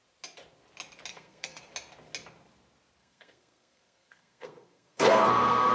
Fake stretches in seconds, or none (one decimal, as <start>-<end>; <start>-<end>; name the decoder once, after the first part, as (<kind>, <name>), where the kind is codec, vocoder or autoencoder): 1.1-1.7 (codec, SNAC); 3.0-5.7